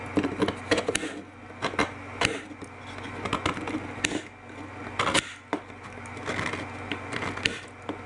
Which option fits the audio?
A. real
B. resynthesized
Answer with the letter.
A